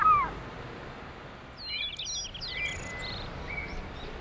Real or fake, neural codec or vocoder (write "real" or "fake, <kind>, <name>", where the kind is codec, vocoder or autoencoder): real